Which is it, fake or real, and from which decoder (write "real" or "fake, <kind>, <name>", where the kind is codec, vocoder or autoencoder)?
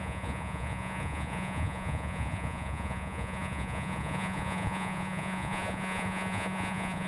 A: fake, vocoder, Vocos